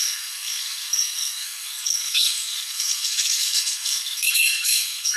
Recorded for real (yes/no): no